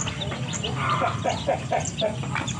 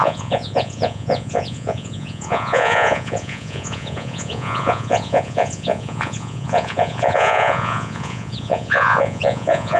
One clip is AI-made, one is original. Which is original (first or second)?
first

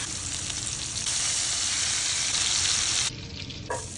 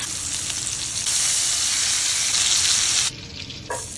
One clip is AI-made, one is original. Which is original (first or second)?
second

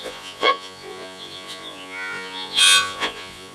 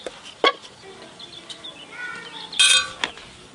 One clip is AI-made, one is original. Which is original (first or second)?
second